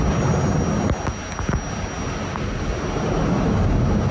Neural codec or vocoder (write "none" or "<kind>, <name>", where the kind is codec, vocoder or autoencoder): none